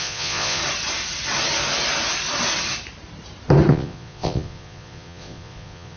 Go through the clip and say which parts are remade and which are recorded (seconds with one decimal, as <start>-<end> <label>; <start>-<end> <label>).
0.0-0.6 remade; 0.6-3.7 recorded; 3.7-6.0 remade